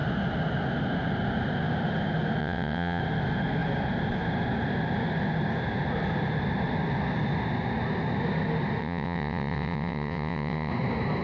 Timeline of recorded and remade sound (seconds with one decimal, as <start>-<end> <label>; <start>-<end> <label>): 0.0-2.4 recorded; 2.4-3.0 remade; 3.0-8.8 recorded; 8.8-10.7 remade; 10.7-11.2 recorded